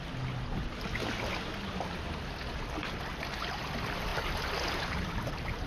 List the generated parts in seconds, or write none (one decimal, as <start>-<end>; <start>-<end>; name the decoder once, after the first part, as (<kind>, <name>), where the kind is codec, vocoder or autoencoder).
none

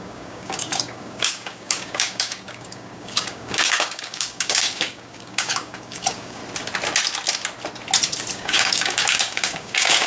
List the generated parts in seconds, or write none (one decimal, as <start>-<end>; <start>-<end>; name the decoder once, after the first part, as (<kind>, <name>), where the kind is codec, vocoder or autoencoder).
0.0-6.4 (codec, DAC); 8.3-10.1

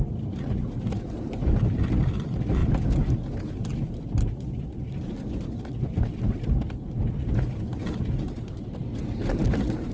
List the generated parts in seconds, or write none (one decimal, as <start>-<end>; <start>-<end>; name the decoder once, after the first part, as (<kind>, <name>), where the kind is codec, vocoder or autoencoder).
none